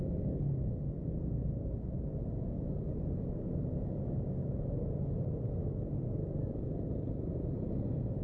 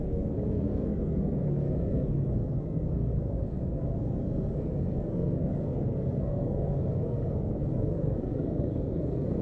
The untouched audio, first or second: first